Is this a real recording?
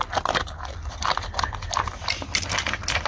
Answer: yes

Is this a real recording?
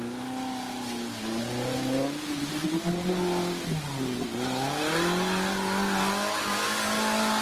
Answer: yes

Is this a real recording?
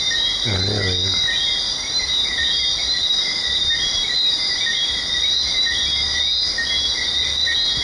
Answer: yes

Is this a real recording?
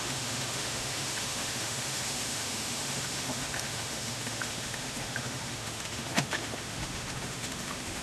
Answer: no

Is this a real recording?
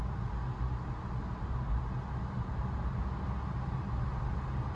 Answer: yes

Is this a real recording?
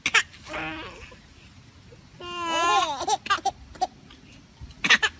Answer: yes